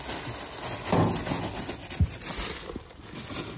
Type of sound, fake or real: real